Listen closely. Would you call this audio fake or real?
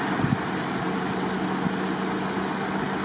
real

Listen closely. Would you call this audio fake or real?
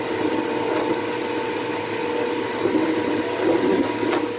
real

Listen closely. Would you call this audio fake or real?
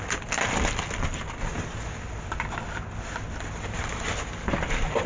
real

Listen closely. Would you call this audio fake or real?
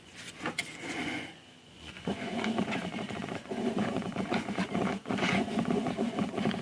fake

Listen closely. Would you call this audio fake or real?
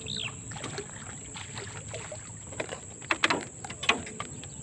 real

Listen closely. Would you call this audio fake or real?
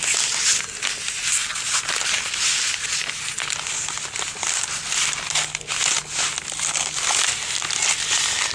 real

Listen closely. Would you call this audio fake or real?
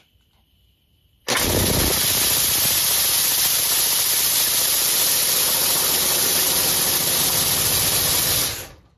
real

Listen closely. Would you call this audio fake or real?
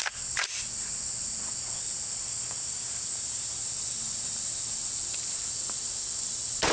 real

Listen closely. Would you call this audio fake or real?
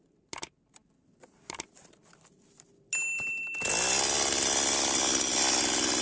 real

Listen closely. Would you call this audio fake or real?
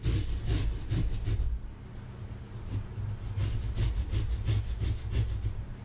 real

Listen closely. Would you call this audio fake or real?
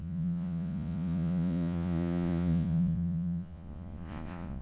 fake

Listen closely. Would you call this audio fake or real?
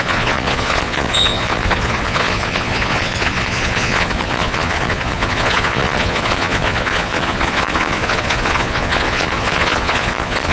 fake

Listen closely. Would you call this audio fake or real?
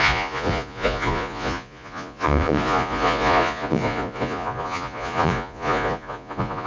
fake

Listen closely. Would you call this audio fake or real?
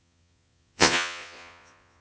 fake